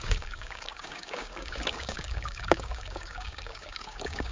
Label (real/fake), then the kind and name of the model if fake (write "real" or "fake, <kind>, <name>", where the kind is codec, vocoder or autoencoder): fake, codec, DAC